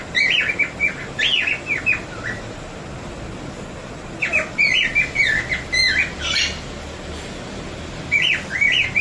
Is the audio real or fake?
real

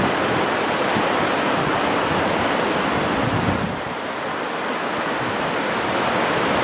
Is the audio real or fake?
real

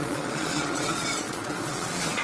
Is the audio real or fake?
fake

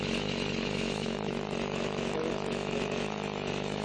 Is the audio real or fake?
fake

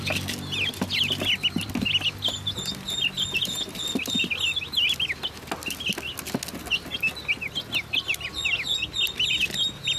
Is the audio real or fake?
real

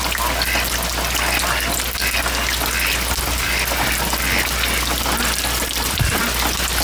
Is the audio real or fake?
real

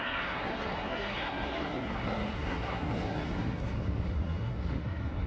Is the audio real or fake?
fake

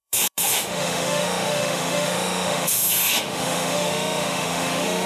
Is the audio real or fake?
fake